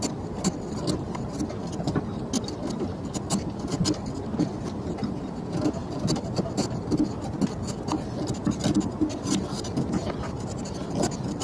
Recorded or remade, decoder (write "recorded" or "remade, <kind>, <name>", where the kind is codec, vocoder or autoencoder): recorded